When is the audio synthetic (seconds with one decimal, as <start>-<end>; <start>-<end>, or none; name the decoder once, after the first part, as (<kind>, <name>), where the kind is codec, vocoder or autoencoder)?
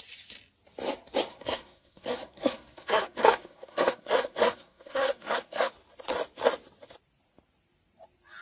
1.3-5.7 (codec, SNAC)